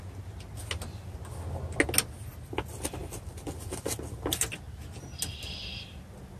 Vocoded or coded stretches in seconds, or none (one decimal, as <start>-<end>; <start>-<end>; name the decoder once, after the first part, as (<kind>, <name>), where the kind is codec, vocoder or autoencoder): none